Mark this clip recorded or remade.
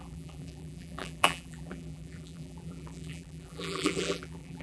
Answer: remade